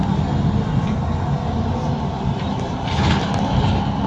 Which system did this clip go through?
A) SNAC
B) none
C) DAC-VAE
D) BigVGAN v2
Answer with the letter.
B